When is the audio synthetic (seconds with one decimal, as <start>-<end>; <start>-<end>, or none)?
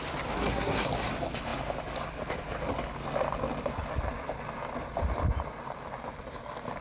0.4-0.9